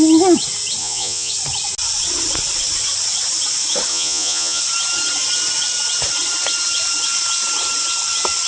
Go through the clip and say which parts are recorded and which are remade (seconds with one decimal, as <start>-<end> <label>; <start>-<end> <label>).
0.0-0.8 recorded; 0.8-1.3 remade; 1.3-3.9 recorded; 3.9-4.6 remade; 4.6-8.5 recorded